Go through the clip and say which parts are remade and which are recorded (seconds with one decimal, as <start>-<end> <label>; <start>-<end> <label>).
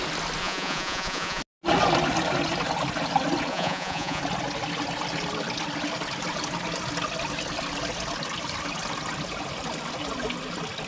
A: 0.0-0.4 recorded; 0.4-1.4 remade; 1.4-3.5 recorded; 3.5-4.2 remade; 4.2-10.9 recorded